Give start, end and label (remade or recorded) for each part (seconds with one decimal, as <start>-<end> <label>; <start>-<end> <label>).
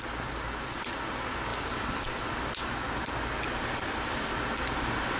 0.0-5.2 recorded